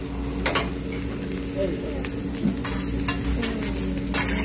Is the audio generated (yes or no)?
no